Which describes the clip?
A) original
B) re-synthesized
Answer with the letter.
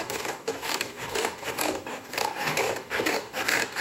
B